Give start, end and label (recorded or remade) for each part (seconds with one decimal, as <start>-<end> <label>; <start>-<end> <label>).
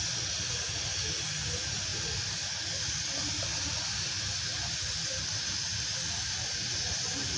0.0-7.4 recorded